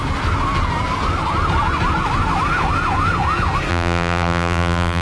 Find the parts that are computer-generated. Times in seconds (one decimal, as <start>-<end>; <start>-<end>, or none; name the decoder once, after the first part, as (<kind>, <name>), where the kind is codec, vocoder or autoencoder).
3.7-5.0 (vocoder, BigVGAN v2)